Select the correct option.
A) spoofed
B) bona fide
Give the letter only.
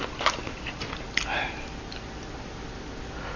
B